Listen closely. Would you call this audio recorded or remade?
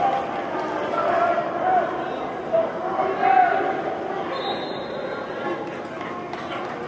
recorded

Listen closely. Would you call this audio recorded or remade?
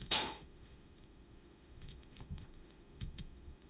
remade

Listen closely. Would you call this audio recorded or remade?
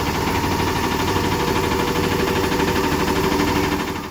recorded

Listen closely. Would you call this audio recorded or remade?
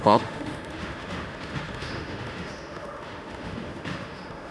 remade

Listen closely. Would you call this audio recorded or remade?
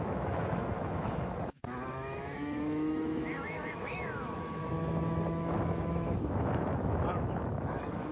remade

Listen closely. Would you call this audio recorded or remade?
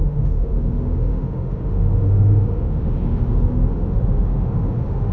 remade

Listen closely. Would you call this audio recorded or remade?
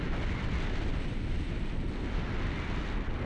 recorded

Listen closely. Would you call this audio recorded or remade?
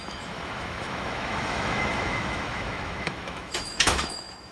remade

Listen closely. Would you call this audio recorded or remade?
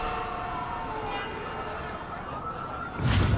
recorded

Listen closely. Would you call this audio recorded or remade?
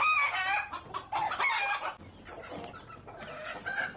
recorded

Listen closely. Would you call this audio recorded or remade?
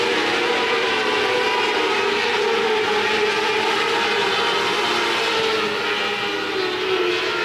recorded